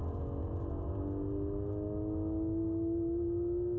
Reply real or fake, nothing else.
real